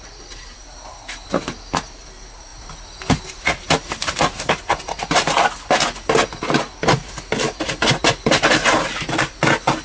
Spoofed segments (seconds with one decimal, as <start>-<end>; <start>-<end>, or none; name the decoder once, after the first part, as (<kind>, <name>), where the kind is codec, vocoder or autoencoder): none